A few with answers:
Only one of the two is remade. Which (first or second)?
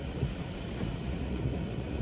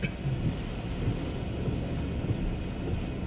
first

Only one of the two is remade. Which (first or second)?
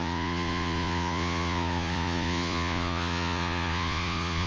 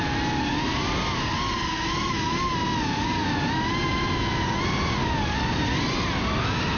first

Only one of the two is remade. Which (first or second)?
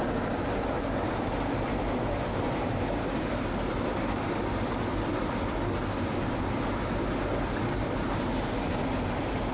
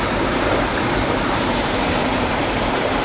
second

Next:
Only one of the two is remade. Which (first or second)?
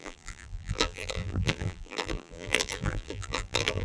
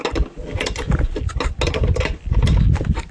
first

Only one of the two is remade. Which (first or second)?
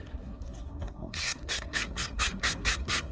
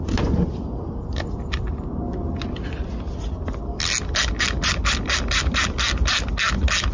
first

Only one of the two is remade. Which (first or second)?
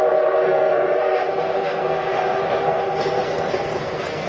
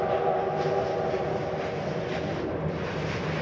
first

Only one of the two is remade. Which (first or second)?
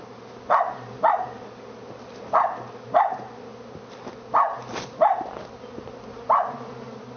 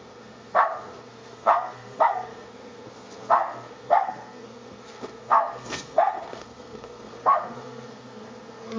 second